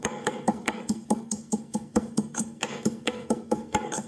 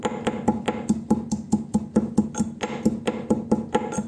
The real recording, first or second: second